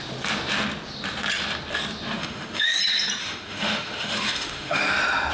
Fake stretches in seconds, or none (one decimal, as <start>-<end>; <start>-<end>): 2.2-2.8; 3.2-4.8